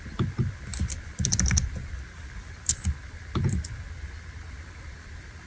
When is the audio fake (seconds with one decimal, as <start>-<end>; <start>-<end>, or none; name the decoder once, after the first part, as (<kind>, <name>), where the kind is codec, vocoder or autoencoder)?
none